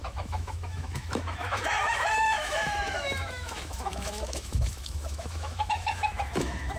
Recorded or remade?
remade